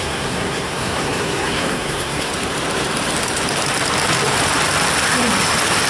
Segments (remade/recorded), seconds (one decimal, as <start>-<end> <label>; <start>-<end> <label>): 0.0-2.3 remade; 2.3-5.9 recorded